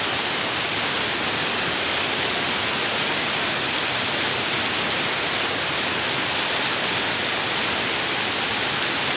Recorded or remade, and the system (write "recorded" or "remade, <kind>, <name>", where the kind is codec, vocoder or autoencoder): recorded